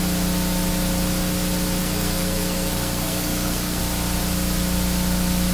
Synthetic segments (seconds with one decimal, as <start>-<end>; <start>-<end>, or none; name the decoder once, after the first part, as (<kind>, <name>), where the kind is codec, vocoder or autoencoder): 1.8-3.8 (codec, SNAC)